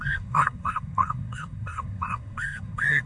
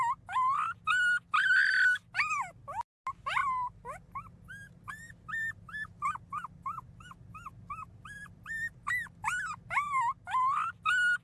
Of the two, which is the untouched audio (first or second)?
second